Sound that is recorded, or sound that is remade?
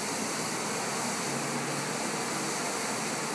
recorded